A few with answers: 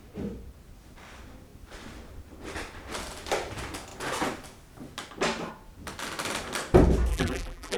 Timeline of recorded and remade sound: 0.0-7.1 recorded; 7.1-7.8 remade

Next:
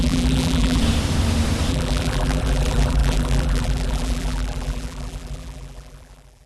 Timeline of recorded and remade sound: 0.0-0.8 remade; 0.8-1.7 recorded; 1.7-6.5 remade

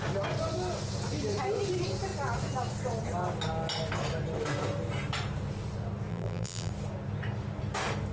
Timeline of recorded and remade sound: 0.0-6.1 recorded; 6.1-6.7 remade; 6.7-8.1 recorded

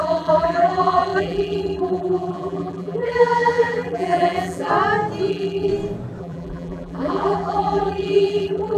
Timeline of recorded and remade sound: 0.0-4.7 remade; 4.7-5.3 recorded; 5.3-5.7 remade; 5.7-6.2 recorded; 6.2-8.8 remade